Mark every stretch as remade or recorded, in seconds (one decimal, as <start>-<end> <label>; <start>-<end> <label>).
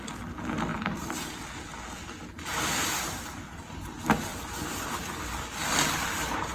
0.0-4.3 recorded; 4.3-6.5 remade